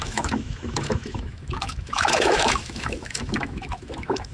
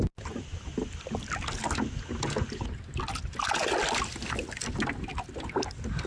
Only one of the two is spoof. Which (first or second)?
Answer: first